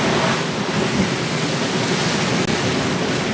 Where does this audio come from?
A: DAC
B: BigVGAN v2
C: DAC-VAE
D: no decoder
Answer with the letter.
D